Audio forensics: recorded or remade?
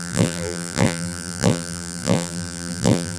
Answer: remade